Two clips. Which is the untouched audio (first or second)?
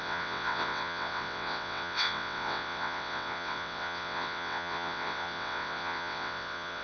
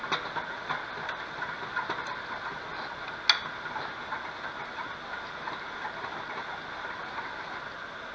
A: second